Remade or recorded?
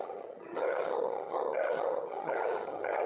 remade